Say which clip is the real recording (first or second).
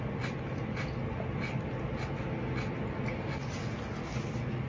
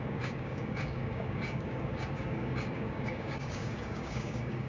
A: first